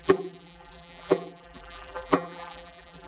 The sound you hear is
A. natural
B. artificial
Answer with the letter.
B